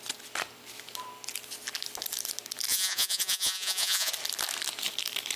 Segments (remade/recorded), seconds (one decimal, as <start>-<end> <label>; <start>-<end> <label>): 0.0-2.7 recorded; 2.7-4.1 remade; 4.1-5.4 recorded